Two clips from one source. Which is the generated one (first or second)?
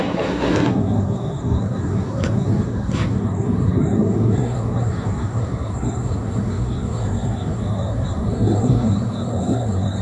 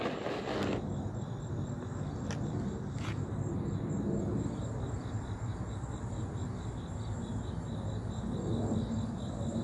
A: first